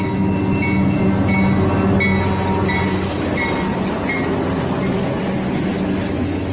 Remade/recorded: recorded